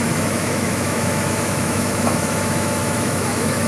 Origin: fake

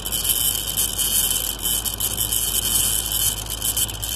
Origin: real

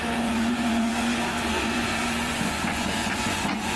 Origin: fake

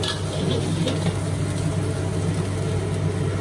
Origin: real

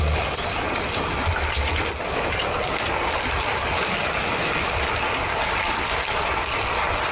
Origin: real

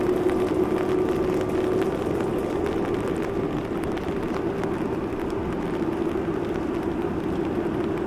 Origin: real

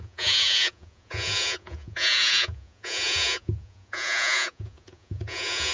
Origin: fake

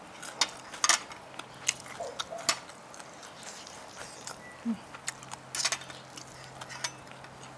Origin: real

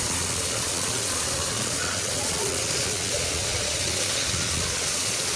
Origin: fake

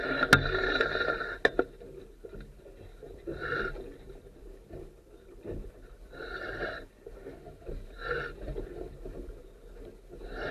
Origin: real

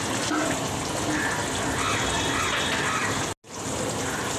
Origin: real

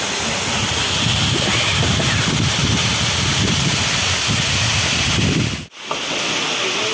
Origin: real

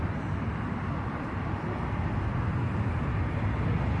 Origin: real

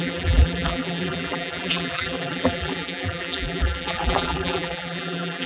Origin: fake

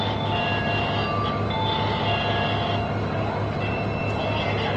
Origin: real